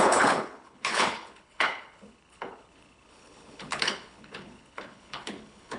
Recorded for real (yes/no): no